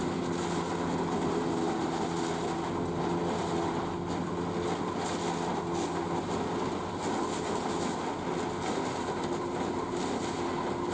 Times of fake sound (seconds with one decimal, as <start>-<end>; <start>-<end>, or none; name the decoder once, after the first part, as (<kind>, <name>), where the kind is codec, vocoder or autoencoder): none